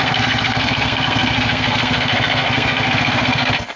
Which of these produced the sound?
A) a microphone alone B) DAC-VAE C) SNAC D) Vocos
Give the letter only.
C